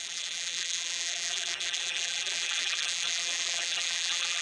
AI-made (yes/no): yes